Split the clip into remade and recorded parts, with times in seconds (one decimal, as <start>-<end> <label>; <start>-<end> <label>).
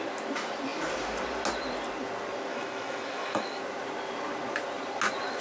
0.0-2.5 recorded; 2.5-3.6 remade; 3.6-5.4 recorded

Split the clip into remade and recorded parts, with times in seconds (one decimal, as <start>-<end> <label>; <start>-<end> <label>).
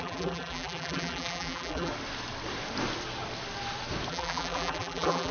0.0-1.9 remade; 1.9-4.1 recorded; 4.1-5.3 remade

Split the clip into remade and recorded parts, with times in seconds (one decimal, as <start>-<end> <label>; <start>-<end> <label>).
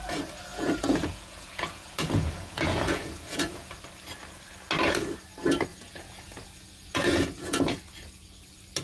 0.0-0.5 recorded; 0.5-3.7 remade; 3.7-5.7 recorded; 5.7-7.8 remade; 7.8-8.8 recorded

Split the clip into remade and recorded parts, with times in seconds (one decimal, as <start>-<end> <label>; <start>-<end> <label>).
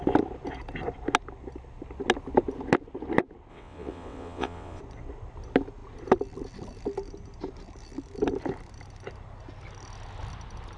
0.0-3.5 recorded; 3.5-4.8 remade; 4.8-10.8 recorded